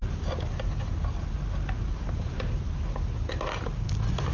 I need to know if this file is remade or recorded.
recorded